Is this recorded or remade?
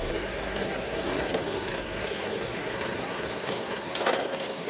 remade